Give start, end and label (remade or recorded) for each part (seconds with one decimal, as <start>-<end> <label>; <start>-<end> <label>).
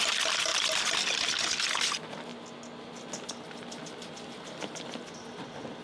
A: 0.0-5.8 recorded